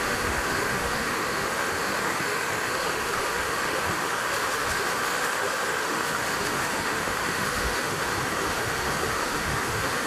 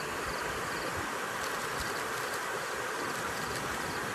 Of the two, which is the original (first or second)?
second